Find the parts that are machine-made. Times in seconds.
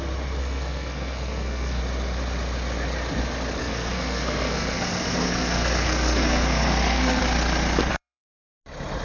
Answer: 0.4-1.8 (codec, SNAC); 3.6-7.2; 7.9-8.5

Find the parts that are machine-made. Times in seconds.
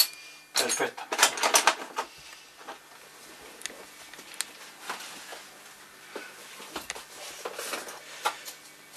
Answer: none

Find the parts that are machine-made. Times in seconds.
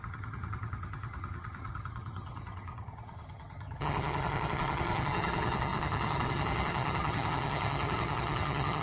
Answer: 0.0-8.8 (vocoder, HiFi-GAN)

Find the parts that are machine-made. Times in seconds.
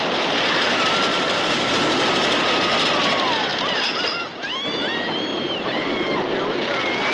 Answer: 1.1-1.7 (vocoder, BigVGAN v2); 3.5-4.0; 5.3-5.8